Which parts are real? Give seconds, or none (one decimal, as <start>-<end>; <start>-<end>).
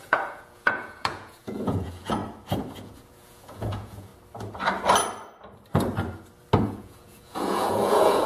2.2-2.8; 4.1-6.6